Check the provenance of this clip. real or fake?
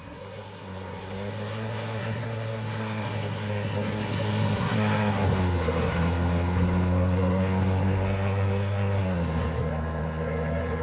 fake